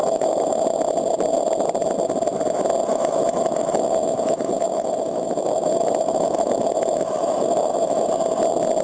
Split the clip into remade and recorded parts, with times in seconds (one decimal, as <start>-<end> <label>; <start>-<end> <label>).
0.0-0.6 remade; 0.6-2.9 recorded; 2.9-8.1 remade; 8.1-8.8 recorded